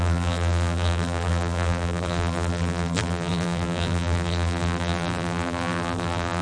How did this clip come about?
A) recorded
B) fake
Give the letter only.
B